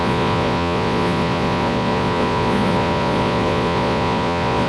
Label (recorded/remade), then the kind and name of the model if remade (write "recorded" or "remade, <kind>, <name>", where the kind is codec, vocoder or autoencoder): remade, vocoder, Vocos